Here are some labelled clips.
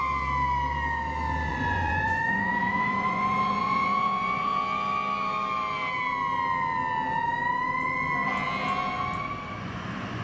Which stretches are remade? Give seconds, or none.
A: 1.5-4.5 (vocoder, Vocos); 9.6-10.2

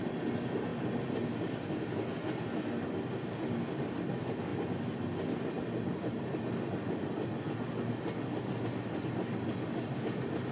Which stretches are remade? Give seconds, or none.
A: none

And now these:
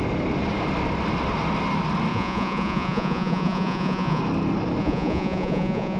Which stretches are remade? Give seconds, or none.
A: 2.1-4.2 (vocoder, Vocos); 4.8-6.0